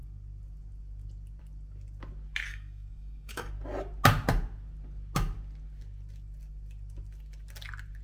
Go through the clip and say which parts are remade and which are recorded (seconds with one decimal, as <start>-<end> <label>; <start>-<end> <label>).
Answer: 0.0-2.5 recorded; 2.5-3.5 remade; 3.5-8.0 recorded